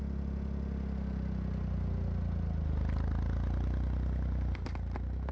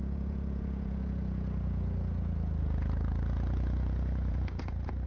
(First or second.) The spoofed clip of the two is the second